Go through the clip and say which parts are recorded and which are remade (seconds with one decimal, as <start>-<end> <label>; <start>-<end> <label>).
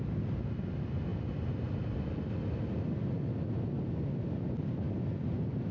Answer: 0.0-5.7 recorded